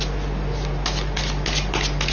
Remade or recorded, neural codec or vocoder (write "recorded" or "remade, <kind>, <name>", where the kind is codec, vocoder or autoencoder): recorded